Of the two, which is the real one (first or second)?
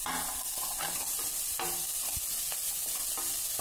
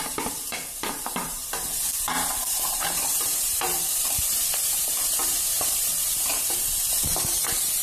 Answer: first